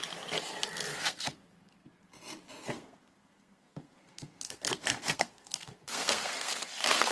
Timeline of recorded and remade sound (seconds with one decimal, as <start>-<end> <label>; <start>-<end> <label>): 0.0-0.9 recorded; 0.9-1.9 remade; 1.9-2.6 recorded; 2.6-7.1 remade